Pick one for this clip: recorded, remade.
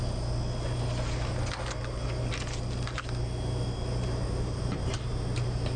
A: recorded